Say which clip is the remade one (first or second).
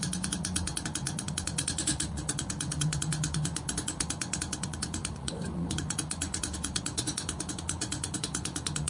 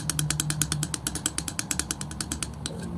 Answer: first